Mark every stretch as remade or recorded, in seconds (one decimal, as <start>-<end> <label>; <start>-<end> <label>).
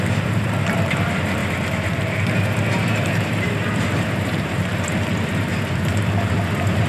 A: 0.0-1.4 remade; 1.4-2.0 recorded; 2.0-4.7 remade; 4.7-5.3 recorded; 5.3-6.9 remade